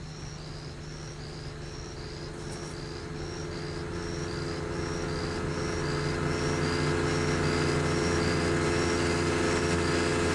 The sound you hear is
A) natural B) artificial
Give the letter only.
A